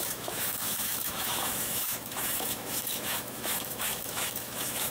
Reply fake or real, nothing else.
fake